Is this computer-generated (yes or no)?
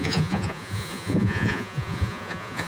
yes